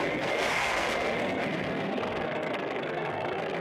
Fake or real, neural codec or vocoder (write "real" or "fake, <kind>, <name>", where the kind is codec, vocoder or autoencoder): fake, codec, SNAC